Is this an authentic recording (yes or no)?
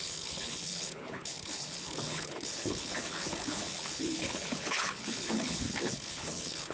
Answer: no